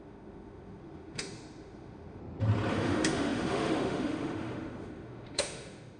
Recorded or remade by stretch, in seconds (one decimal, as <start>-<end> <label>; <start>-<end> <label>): 0.0-2.2 remade; 2.2-2.7 recorded; 2.7-6.0 remade